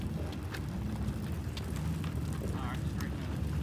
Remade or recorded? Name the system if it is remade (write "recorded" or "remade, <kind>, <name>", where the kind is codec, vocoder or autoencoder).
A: recorded